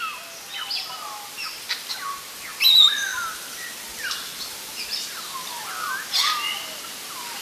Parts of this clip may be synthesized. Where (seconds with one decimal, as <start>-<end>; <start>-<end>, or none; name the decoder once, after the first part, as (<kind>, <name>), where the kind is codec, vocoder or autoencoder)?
none